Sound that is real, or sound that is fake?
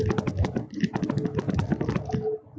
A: real